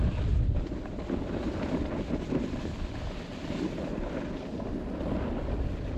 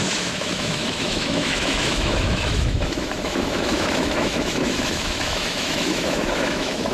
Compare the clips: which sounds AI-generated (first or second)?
second